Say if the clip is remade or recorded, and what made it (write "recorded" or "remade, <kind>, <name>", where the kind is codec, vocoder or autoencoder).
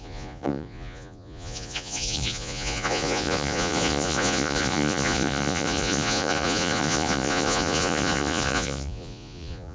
remade, vocoder, Vocos